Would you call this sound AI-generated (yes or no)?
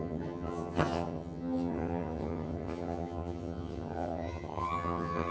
yes